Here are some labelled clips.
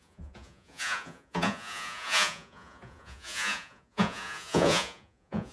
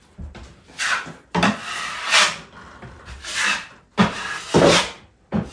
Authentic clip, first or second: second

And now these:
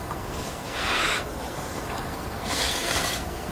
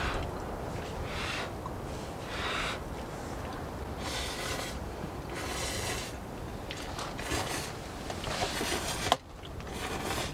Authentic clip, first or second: second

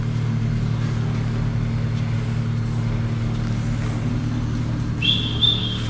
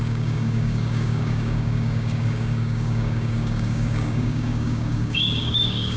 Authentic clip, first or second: first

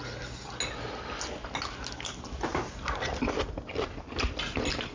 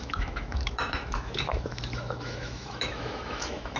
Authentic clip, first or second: first